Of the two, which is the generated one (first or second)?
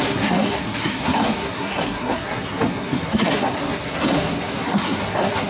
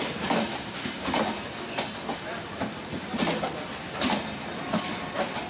first